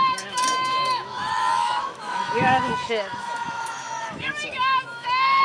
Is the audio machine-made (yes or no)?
yes